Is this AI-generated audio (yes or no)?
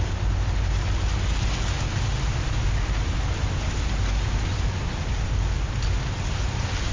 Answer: no